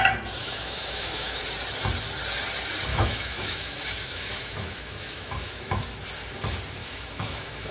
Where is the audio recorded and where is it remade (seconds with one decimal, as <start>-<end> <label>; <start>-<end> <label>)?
0.0-0.4 recorded; 0.4-1.4 remade; 1.4-2.9 recorded; 2.9-5.8 remade; 5.8-6.8 recorded; 6.8-7.7 remade